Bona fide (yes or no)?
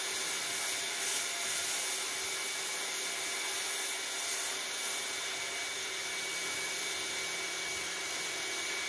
yes